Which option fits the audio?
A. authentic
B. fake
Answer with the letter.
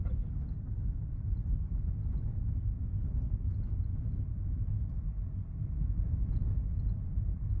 B